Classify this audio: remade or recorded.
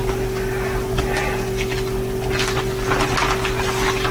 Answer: recorded